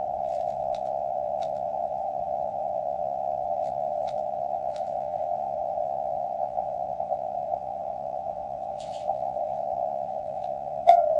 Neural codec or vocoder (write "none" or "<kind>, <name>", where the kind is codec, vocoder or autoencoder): vocoder, WaveNeXt